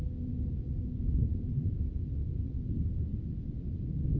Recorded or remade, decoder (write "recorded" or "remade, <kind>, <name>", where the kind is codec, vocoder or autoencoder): recorded